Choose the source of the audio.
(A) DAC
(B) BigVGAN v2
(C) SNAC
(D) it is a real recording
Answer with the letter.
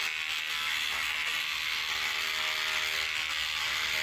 D